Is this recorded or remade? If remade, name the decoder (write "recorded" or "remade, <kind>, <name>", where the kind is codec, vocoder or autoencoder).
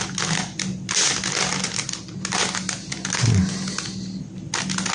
recorded